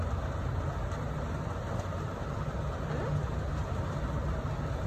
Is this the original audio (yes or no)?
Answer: yes